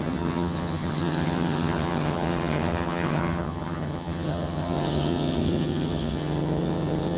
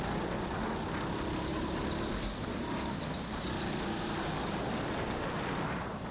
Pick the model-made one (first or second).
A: first